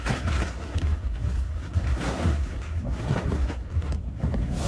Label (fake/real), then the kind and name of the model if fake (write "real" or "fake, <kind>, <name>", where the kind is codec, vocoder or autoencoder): fake, codec, SNAC